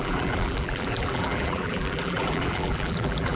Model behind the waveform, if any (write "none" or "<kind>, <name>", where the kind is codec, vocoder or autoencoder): vocoder, BigVGAN v2